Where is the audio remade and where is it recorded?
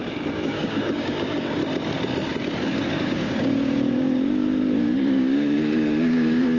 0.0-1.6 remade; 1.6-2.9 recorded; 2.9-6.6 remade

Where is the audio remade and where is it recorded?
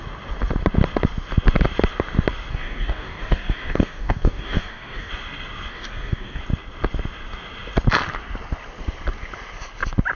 0.0-2.5 recorded; 2.5-5.1 remade; 5.1-5.7 recorded; 5.7-6.4 remade; 6.4-10.1 recorded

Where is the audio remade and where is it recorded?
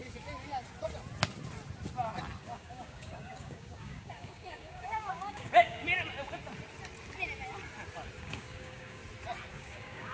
0.0-2.4 recorded; 2.4-5.8 remade; 5.8-8.2 recorded; 8.2-9.0 remade; 9.0-9.5 recorded; 9.5-10.1 remade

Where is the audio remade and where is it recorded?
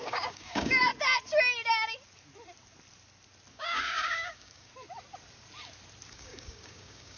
0.0-0.9 remade; 0.9-3.5 recorded; 3.5-4.7 remade; 4.7-6.1 recorded; 6.1-7.2 remade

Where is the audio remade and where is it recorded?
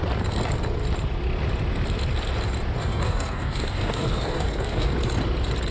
0.0-2.8 recorded; 2.8-4.9 remade; 4.9-5.7 recorded